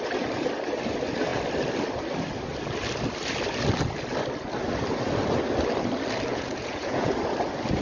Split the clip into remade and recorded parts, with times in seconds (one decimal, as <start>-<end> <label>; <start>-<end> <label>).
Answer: 0.0-6.3 recorded; 6.3-7.1 remade; 7.1-7.8 recorded